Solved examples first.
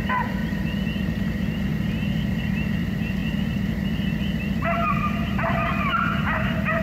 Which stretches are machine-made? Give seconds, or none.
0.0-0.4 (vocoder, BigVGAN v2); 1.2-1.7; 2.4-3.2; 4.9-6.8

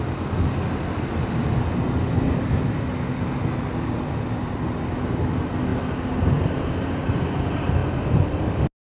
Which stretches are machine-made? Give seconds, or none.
none

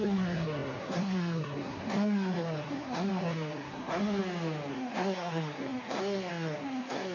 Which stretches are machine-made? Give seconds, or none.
0.0-4.2 (codec, SNAC); 4.7-7.1

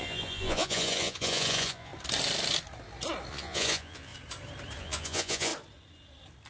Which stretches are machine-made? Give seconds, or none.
0.0-1.9 (vocoder, Vocos); 3.3-4.1; 4.8-5.5

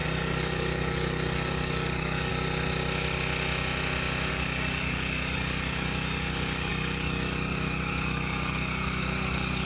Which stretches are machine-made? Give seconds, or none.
0.0-2.3 (codec, DAC); 4.3-9.7

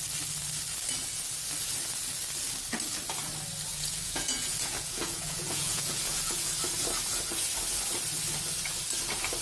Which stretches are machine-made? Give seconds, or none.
3.7-6.5 (vocoder, Vocos)

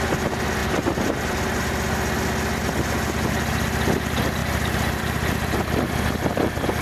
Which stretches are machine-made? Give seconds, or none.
0.6-1.3 (vocoder, BigVGAN v2); 4.4-5.0